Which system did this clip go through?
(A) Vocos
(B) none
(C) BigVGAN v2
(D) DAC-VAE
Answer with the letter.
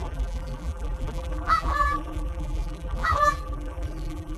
C